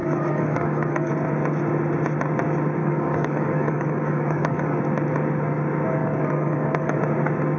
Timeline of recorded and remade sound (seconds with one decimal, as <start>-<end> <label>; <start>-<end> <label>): 0.0-1.1 remade; 1.1-2.8 recorded; 2.8-4.8 remade; 4.8-6.0 recorded; 6.0-7.0 remade; 7.0-7.6 recorded